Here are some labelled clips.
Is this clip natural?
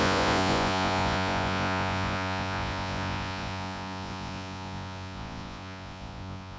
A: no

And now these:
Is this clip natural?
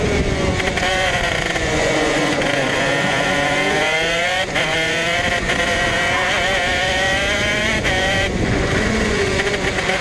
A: no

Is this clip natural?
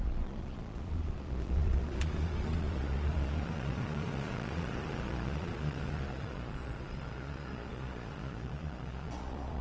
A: no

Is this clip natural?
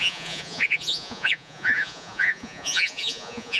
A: no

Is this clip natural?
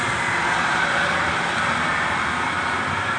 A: yes